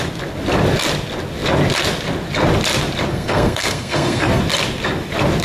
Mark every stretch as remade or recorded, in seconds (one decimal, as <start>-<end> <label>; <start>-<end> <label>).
0.0-3.1 recorded; 3.1-4.4 remade; 4.4-5.4 recorded